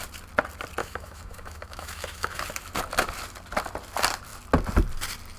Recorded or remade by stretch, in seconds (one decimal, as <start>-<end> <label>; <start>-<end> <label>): 0.0-0.8 recorded; 0.8-2.4 remade; 2.4-5.4 recorded